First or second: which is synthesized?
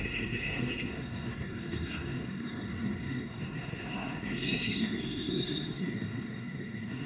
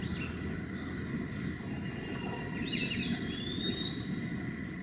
first